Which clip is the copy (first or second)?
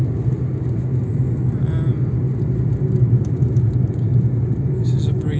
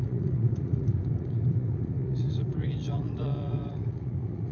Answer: second